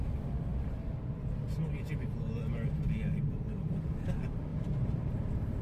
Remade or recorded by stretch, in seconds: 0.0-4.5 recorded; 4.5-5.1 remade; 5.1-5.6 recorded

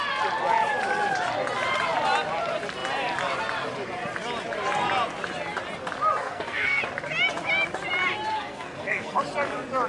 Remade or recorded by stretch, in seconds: 0.0-6.2 recorded; 6.2-6.8 remade; 6.8-8.3 recorded; 8.3-9.2 remade; 9.2-9.9 recorded

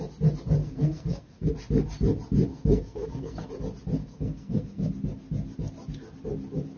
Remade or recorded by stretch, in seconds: 0.0-0.6 recorded; 0.6-1.5 remade; 1.5-2.5 recorded; 2.5-3.5 remade; 3.5-4.0 recorded; 4.0-4.9 remade; 4.9-6.8 recorded

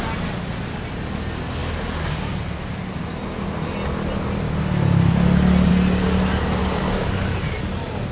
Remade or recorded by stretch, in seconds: 0.0-6.6 recorded; 6.6-7.6 remade; 7.6-8.1 recorded